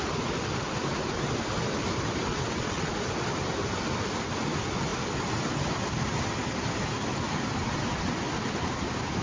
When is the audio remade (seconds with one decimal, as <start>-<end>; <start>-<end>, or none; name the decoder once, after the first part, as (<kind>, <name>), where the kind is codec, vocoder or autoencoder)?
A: 2.3-2.9 (vocoder, WaveNeXt)